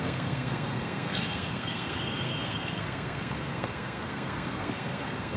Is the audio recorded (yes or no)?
no